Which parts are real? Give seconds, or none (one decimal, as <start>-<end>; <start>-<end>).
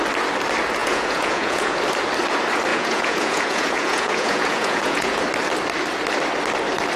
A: 0.0-0.8; 1.8-2.7; 5.2-7.0